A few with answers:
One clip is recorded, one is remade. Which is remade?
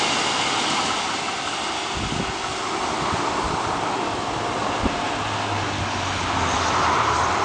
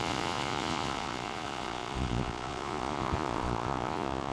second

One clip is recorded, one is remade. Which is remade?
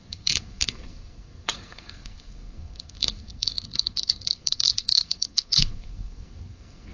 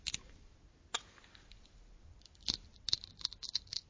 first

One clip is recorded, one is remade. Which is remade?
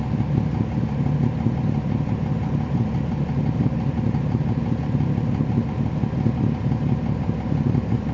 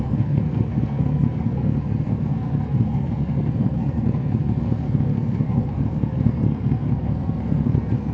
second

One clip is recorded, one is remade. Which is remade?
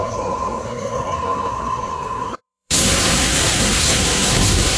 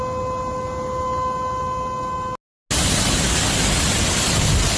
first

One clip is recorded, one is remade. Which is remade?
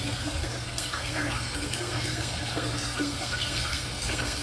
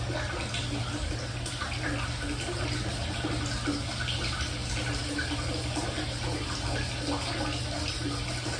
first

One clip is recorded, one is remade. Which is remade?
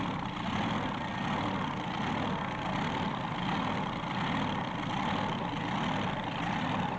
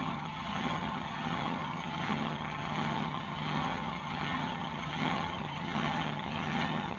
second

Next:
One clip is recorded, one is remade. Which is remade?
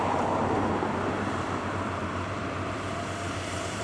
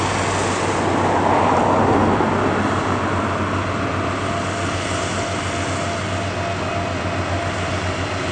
first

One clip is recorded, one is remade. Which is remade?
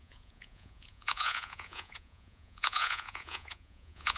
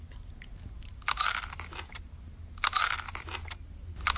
first